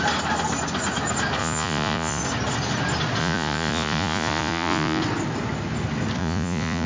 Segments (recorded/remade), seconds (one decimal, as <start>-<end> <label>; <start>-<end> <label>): 0.0-1.4 recorded; 1.4-2.2 remade; 2.2-3.2 recorded; 3.2-5.0 remade; 5.0-6.2 recorded; 6.2-6.9 remade